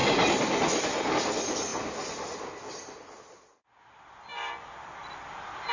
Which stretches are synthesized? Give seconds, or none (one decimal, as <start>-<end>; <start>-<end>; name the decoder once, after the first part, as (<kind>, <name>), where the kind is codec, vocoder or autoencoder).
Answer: none